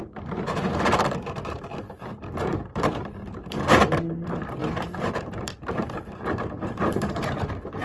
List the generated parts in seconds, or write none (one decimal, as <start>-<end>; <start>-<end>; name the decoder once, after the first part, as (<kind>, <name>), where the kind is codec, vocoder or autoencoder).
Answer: 0.0-7.8 (vocoder, BigVGAN v2)